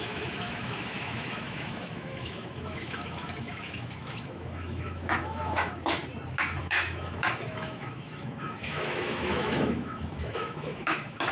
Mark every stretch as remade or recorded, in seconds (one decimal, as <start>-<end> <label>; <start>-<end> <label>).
0.0-6.0 remade; 6.0-6.6 recorded; 6.6-11.3 remade